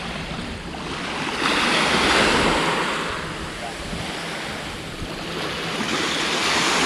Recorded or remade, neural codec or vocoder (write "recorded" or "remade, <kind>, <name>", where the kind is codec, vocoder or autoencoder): recorded